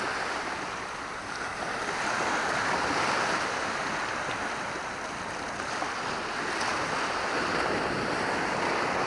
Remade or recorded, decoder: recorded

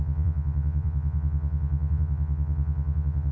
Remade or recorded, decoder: remade, vocoder, Vocos